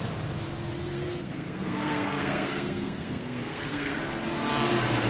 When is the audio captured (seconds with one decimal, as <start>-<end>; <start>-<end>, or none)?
0.0-0.9; 4.0-5.1